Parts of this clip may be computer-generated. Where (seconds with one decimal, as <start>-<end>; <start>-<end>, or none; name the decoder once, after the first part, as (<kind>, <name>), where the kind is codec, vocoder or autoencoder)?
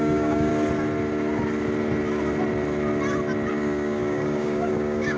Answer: 0.0-0.5 (codec, DAC); 3.5-5.2